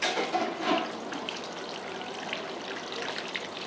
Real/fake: real